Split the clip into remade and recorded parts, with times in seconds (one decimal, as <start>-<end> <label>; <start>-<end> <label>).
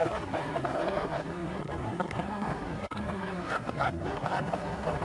0.0-5.0 remade